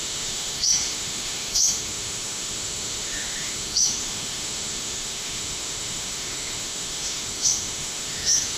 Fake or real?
fake